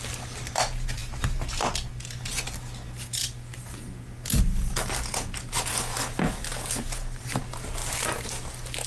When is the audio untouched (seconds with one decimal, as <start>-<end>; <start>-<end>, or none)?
0.0-8.9